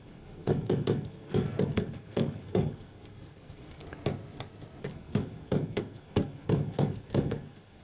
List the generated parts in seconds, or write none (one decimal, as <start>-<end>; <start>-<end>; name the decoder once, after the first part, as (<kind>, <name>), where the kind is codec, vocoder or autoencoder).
0.0-3.8 (codec, SNAC); 4.8-7.8